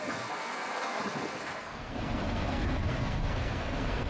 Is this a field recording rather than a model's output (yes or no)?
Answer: no